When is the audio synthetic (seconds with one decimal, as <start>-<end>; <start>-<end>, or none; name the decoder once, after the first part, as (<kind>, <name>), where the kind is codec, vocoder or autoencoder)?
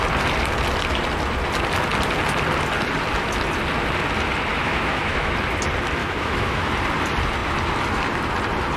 4.5-5.3 (autoencoder, DAC-VAE); 6.0-6.7